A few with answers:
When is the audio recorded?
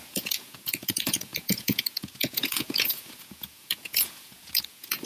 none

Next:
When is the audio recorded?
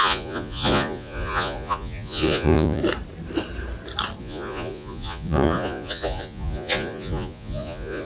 2.8-4.2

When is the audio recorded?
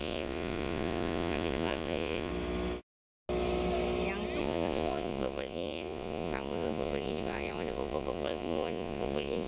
2.3-4.4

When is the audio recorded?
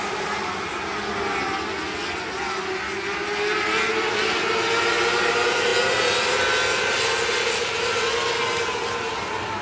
0.0-9.6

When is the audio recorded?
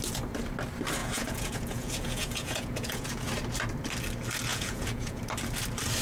0.0-1.0; 3.3-4.5; 5.2-6.0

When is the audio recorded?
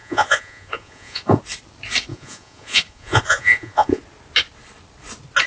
1.4-2.1; 4.0-5.5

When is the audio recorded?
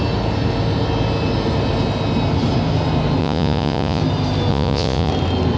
0.0-3.2; 4.0-4.5; 5.1-5.6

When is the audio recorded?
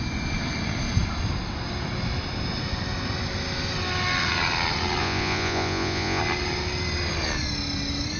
0.0-5.0; 6.2-8.2